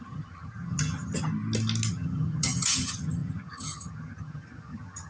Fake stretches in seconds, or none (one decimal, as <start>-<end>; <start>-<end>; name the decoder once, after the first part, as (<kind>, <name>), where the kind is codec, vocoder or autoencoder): 0.0-1.3 (vocoder, HiFi-GAN); 1.9-5.1